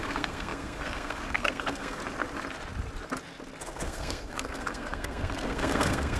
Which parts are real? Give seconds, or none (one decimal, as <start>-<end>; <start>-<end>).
2.0-3.6